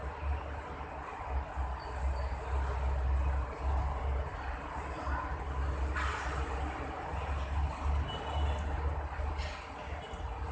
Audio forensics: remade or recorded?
recorded